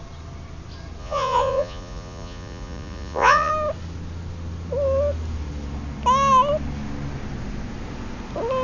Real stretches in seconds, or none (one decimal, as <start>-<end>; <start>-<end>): 0.0-1.0; 3.5-8.6